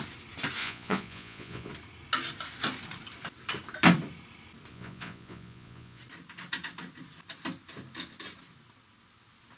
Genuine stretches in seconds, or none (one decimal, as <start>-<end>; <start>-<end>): 0.0-0.6; 1.7-4.7; 6.0-9.6